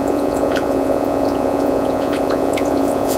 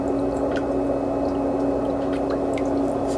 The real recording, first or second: second